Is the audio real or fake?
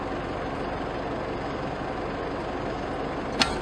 real